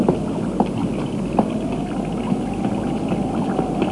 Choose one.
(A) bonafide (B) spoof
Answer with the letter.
A